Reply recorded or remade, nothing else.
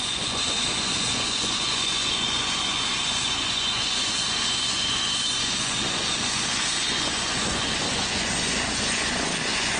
remade